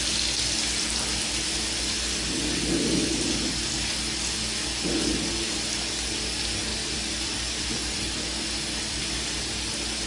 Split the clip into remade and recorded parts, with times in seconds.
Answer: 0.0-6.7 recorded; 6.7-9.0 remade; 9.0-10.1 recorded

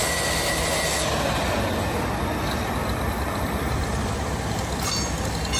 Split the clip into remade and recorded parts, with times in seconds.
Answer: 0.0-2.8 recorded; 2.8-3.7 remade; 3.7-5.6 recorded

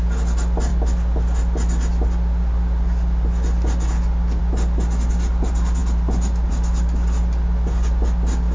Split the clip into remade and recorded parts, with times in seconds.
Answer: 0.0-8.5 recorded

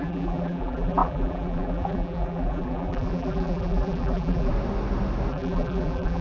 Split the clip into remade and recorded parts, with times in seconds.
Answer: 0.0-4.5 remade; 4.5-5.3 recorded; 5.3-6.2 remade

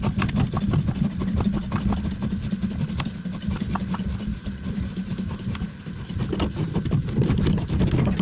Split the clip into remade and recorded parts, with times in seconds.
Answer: 0.0-8.2 recorded